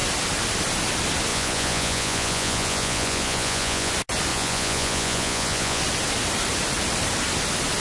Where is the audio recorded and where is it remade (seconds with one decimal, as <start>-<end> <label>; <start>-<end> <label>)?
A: 0.0-1.3 recorded; 1.3-3.9 remade; 3.9-4.3 recorded; 4.3-5.8 remade; 5.8-7.8 recorded